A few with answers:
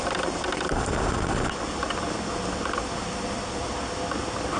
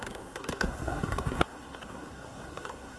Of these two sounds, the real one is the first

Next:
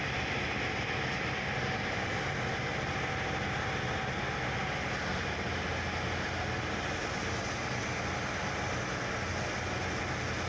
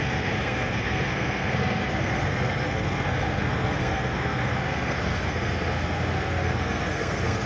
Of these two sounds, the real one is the first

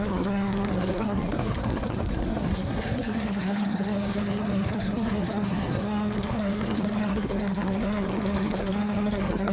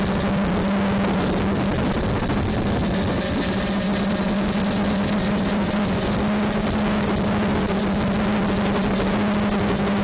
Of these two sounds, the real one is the second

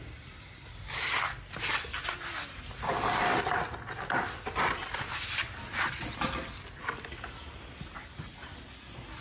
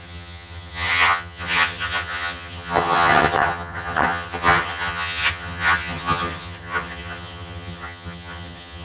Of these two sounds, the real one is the first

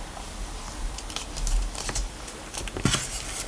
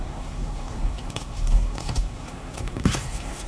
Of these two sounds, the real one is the first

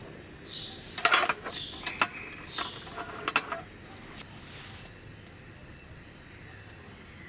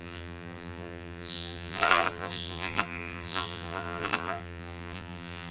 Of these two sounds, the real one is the first